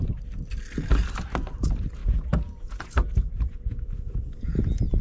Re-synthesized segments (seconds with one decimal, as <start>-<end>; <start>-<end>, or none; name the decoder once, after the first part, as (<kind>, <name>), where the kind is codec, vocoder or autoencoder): 2.0-5.0 (vocoder, Vocos)